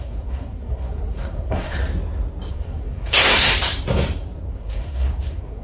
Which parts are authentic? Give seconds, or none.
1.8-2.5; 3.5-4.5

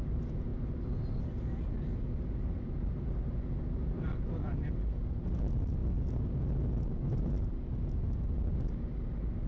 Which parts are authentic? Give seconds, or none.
0.0-9.5

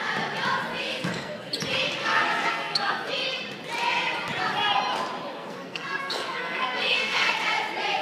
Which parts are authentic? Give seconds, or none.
0.0-0.7; 1.5-2.0; 3.1-5.3; 7.3-8.0

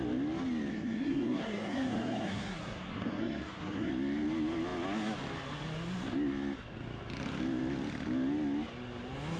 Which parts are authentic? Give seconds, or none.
0.0-0.7; 3.9-9.4

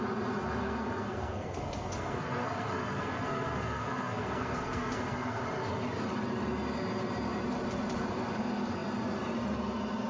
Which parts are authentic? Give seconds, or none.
0.0-0.6; 5.4-10.1

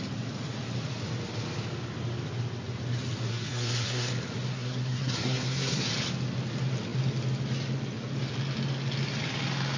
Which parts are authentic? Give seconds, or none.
0.0-3.3; 4.1-4.5; 5.9-9.8

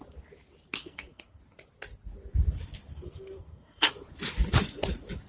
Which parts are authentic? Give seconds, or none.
0.0-0.8; 1.4-2.9; 3.9-5.3